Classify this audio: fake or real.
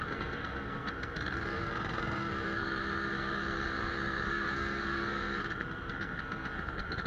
fake